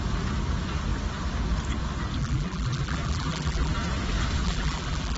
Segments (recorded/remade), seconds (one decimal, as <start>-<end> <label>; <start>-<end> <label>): 0.0-2.2 recorded; 2.2-3.7 remade; 3.7-4.4 recorded; 4.4-5.2 remade